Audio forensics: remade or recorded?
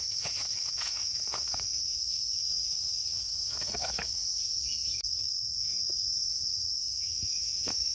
remade